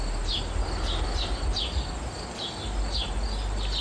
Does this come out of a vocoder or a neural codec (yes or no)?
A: no